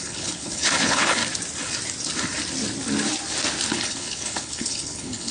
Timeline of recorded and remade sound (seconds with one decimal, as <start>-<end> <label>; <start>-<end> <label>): 0.0-1.2 remade; 1.2-3.7 recorded; 3.7-5.3 remade